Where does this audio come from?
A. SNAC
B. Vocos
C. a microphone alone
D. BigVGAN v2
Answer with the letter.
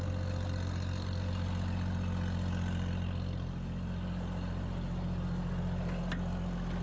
C